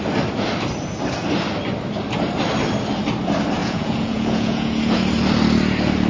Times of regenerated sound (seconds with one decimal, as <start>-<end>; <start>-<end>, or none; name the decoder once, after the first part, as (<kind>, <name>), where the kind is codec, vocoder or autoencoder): 3.6-5.0 (vocoder, Vocos)